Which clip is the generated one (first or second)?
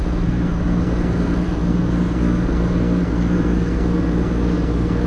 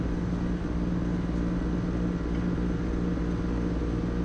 first